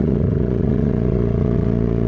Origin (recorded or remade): remade